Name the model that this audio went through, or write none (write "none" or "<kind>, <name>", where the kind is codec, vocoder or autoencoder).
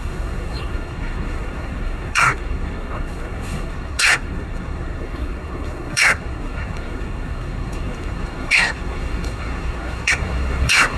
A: codec, SNAC